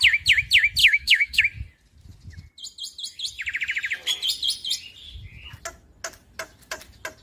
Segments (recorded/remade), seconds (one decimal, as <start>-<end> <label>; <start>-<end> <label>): 0.0-0.8 recorded; 0.8-1.4 remade; 1.4-7.2 recorded